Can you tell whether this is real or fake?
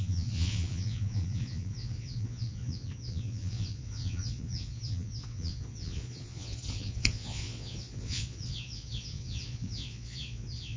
fake